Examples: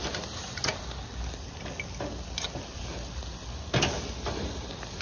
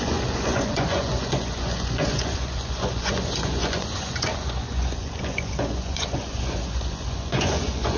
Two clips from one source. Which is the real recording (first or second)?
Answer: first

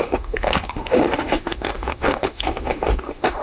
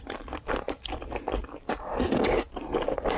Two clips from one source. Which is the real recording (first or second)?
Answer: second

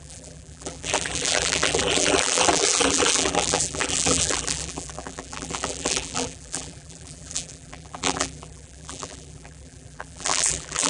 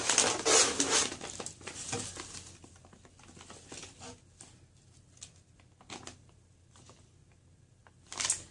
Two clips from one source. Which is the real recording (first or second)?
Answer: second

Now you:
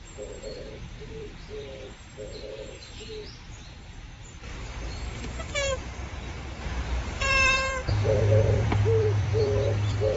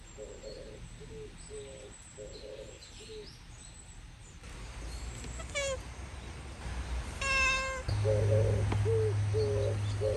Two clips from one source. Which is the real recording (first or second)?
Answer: second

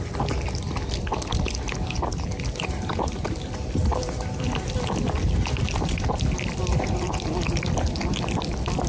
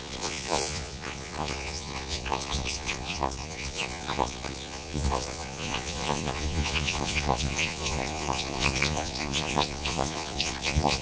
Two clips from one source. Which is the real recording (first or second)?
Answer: first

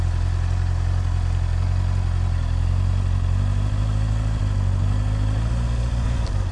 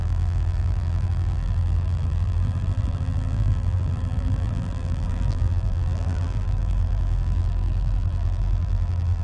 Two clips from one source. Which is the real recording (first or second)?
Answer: first